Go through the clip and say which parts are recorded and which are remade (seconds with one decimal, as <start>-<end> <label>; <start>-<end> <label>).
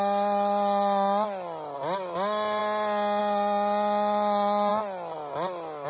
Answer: 0.0-5.9 recorded